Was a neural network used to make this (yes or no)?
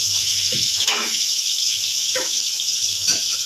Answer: yes